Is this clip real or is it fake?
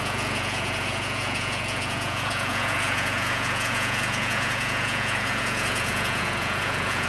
fake